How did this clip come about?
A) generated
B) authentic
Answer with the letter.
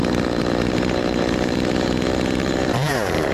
A